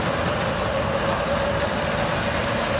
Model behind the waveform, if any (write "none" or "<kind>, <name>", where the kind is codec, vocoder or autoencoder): none